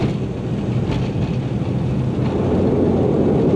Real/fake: real